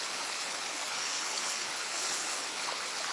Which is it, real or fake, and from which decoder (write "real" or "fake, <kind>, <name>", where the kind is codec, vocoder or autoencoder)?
fake, codec, HILCodec